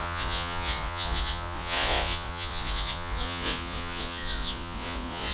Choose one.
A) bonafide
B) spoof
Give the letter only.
B